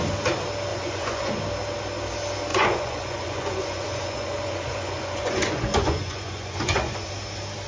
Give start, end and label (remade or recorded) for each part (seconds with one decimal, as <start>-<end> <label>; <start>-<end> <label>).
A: 0.0-0.7 recorded; 0.7-1.3 remade; 1.3-2.5 recorded; 2.5-7.1 remade; 7.1-7.7 recorded